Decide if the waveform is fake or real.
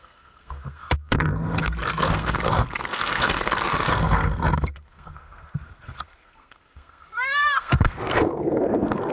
fake